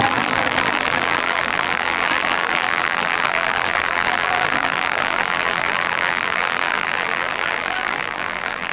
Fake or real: fake